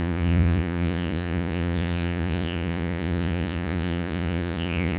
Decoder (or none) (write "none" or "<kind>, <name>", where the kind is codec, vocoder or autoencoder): vocoder, Vocos